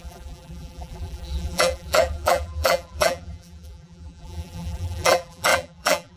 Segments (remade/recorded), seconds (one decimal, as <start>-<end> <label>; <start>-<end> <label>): 0.0-6.2 remade